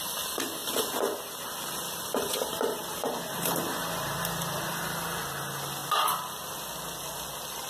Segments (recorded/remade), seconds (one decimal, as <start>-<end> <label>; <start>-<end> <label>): 0.0-7.7 recorded